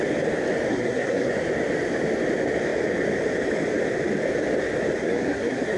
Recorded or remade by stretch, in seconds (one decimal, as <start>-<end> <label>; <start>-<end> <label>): 0.0-0.7 recorded; 0.7-1.3 remade; 1.3-5.0 recorded; 5.0-5.8 remade